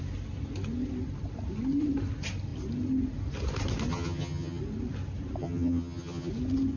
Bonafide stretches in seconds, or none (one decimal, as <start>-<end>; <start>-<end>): 0.0-3.9; 4.6-5.4; 6.3-6.8